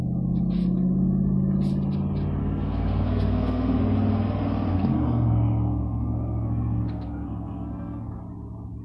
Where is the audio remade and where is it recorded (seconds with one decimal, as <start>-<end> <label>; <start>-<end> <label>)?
0.0-2.4 recorded; 2.4-3.8 remade; 3.8-4.7 recorded; 4.7-8.2 remade; 8.2-8.8 recorded